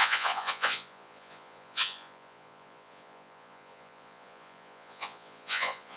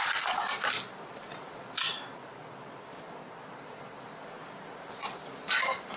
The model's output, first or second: first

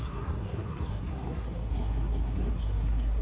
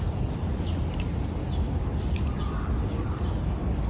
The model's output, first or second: first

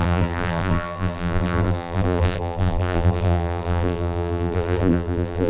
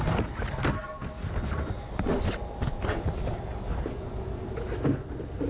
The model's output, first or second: first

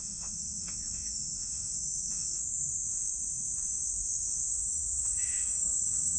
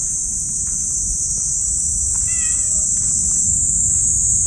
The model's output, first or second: first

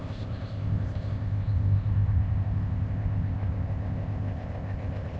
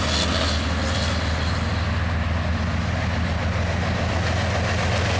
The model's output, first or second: first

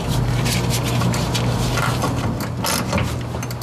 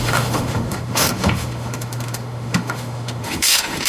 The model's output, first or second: second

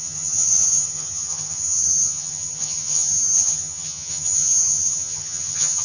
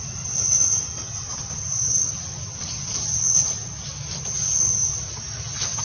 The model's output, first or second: first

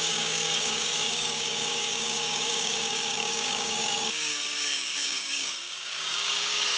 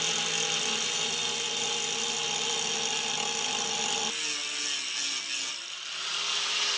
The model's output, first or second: first